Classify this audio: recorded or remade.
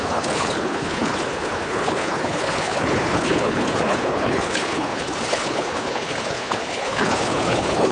remade